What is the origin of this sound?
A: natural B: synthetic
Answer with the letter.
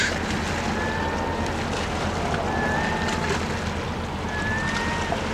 A